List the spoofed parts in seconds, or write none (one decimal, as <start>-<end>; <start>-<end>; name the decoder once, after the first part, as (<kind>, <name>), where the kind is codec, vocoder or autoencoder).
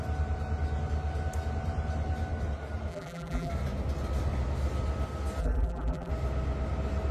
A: 2.9-3.5 (vocoder, BigVGAN v2); 5.4-6.1